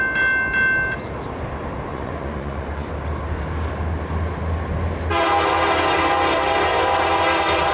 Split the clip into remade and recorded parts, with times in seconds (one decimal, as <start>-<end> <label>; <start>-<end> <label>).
0.0-1.9 recorded; 1.9-2.9 remade; 2.9-7.7 recorded